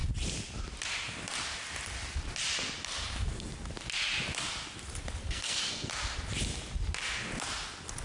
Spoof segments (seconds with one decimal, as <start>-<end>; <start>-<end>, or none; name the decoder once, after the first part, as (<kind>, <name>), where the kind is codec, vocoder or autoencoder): 5.2-5.9 (codec, SNAC)